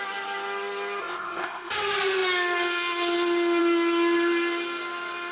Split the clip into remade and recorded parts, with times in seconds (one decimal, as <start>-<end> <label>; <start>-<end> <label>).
0.0-1.0 recorded; 1.0-1.7 remade; 1.7-5.3 recorded

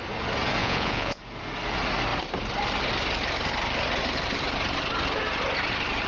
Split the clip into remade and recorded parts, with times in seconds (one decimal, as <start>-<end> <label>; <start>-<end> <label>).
0.0-0.6 recorded; 0.6-1.2 remade; 1.2-6.1 recorded

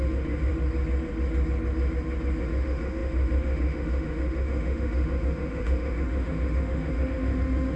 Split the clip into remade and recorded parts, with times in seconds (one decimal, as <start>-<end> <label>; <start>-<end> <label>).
0.0-0.5 remade; 0.5-2.4 recorded; 2.4-7.8 remade

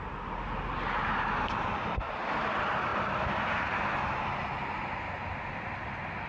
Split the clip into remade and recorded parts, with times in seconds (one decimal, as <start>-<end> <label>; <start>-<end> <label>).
0.0-6.3 recorded